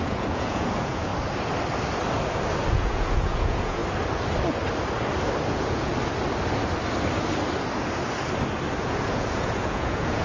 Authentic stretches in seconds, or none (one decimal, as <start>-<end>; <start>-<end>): 1.1-2.7; 3.8-5.5; 5.9-8.8